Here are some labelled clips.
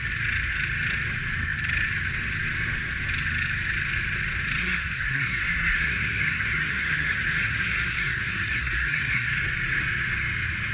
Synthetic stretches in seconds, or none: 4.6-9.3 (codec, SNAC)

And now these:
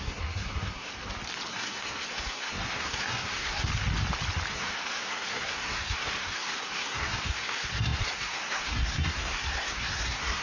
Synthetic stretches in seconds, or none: 0.0-0.9 (codec, SNAC); 1.5-3.7; 4.5-10.4

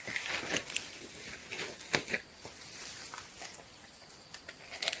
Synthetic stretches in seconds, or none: 0.0-1.4 (vocoder, BigVGAN v2); 2.1-5.0

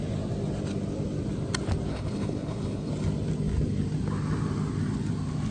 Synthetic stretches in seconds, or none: 1.9-2.9 (codec, HILCodec)

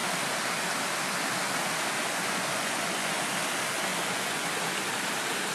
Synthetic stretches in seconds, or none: 2.0-3.2 (vocoder, Vocos); 3.9-4.5